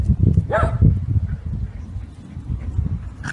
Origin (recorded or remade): recorded